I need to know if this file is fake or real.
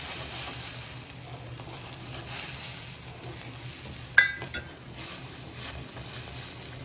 real